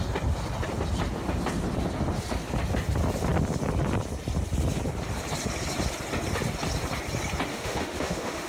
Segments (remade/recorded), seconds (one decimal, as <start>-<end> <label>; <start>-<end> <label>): 0.0-7.5 recorded; 7.5-8.5 remade

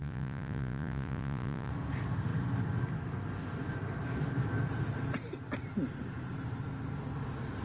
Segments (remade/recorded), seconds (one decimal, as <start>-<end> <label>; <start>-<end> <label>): 0.0-1.7 remade; 1.7-7.6 recorded

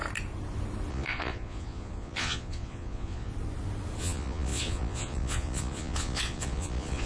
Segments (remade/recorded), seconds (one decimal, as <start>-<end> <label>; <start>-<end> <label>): 0.0-0.9 recorded; 0.9-3.3 remade; 3.3-4.0 recorded; 4.0-7.1 remade

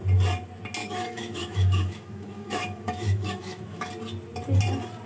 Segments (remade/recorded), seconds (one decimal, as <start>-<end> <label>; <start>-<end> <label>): 0.0-0.8 recorded; 0.8-3.9 remade; 3.9-5.1 recorded